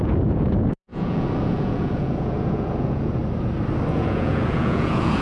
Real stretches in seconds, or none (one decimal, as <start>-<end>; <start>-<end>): 3.2-3.9